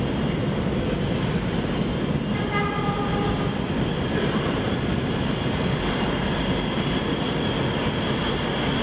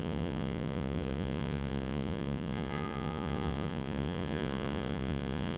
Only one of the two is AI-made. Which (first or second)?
second